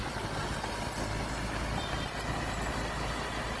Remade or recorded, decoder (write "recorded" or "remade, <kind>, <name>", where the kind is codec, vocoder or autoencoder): recorded